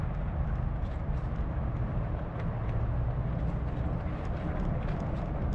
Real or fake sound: real